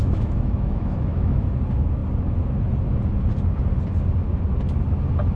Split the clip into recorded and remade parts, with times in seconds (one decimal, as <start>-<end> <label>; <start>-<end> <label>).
0.0-1.5 remade; 1.5-5.4 recorded